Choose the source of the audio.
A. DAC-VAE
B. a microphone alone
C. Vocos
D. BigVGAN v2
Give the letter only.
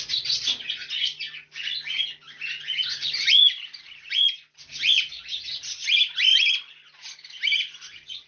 B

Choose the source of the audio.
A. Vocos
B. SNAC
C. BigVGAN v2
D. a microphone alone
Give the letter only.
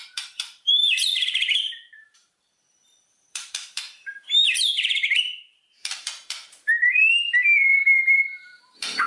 C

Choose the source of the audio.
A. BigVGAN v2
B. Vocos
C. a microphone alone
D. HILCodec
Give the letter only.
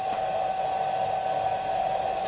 C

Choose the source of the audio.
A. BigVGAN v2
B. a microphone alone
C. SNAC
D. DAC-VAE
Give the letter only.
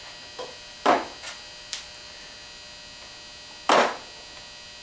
B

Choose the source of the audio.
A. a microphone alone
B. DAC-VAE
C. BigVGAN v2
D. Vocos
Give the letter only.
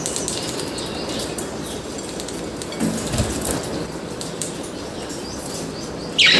A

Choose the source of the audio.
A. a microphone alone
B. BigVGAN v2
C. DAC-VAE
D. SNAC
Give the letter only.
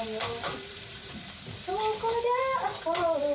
B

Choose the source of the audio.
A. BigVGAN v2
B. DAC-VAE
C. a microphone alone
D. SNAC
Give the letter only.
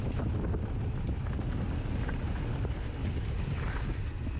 C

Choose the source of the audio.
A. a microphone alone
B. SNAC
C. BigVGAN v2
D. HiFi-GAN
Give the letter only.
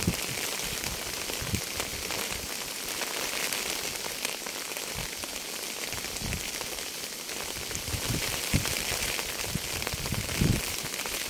C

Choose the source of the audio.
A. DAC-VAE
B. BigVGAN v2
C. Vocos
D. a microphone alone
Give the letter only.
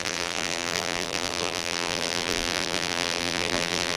B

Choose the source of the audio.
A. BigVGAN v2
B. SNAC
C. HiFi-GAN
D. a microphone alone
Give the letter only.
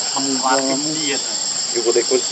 A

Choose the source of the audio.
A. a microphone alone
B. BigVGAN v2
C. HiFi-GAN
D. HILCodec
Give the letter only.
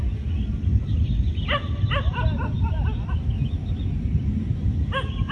A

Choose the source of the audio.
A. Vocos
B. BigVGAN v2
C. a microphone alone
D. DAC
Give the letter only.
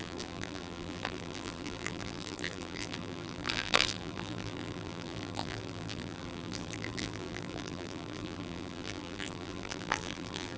B